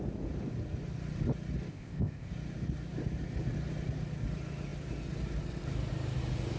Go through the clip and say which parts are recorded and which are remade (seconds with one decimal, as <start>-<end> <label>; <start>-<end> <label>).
0.0-1.7 recorded; 1.7-2.3 remade; 2.3-6.6 recorded